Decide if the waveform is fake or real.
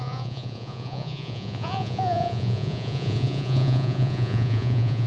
fake